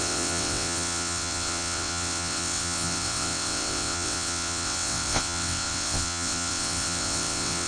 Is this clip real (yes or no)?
no